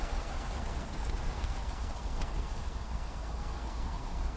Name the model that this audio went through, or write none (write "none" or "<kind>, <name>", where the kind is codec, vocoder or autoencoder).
codec, SNAC